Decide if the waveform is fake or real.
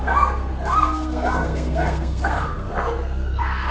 fake